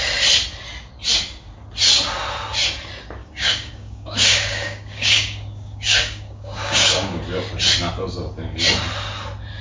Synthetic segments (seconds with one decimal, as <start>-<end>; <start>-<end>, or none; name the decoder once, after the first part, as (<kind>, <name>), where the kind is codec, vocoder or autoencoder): 3.2-7.2 (codec, DAC)